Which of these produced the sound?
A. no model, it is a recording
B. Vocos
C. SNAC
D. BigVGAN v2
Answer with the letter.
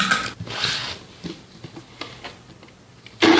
A